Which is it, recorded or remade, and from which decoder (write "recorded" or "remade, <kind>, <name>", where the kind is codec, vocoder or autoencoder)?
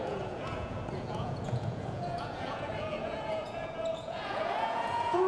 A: remade, vocoder, Vocos